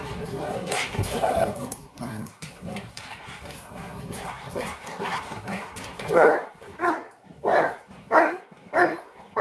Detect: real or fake fake